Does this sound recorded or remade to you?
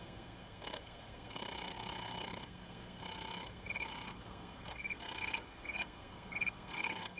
remade